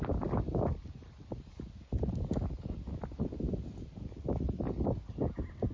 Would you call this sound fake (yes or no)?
no